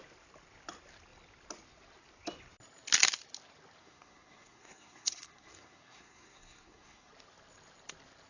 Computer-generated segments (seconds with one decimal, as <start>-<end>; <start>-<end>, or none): 3.8-7.1